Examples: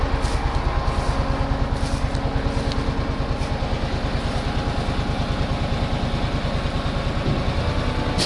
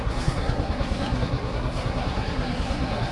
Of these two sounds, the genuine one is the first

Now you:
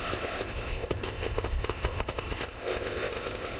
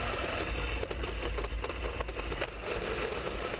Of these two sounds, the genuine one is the second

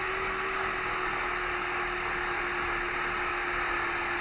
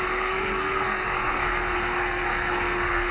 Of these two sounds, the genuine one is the first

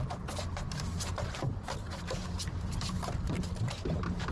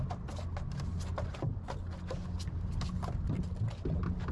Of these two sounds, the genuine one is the second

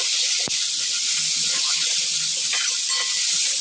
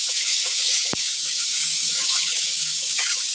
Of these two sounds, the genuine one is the first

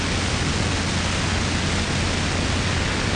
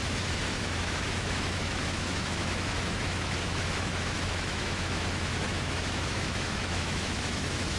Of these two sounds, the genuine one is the first